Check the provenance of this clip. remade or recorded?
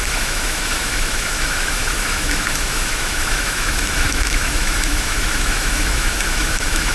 remade